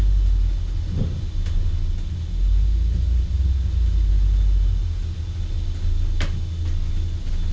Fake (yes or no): no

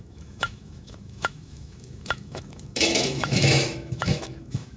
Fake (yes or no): yes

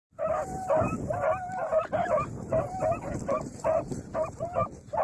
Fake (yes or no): yes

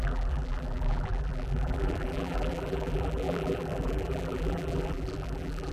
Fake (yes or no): yes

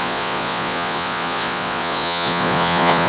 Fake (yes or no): yes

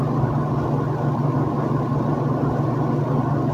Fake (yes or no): no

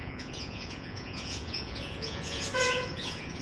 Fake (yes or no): yes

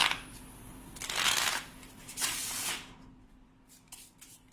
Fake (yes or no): no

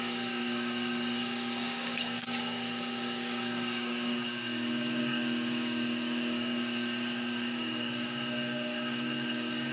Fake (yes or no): yes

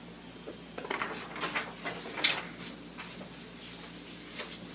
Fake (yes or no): no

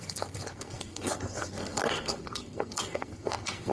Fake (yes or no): yes